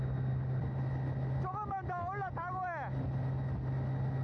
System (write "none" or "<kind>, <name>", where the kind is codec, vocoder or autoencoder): none